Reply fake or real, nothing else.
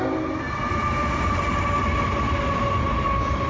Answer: real